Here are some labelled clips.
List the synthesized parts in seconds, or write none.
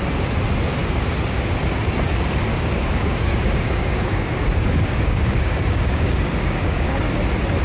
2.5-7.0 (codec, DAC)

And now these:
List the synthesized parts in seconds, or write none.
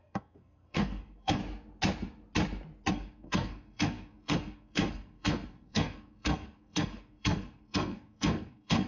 0.0-1.4 (codec, SNAC); 2.9-8.9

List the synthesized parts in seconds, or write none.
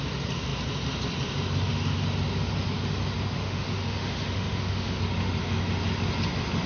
3.4-5.0 (autoencoder, DAC-VAE)